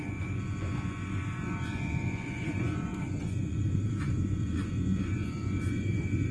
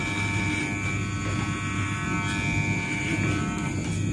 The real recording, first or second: second